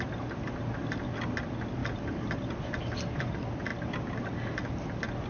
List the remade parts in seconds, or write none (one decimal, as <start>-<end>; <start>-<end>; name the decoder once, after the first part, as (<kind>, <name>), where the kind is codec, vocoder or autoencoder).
1.8-2.5 (vocoder, BigVGAN v2)